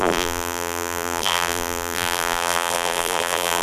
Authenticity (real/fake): fake